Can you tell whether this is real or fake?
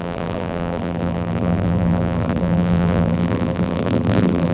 fake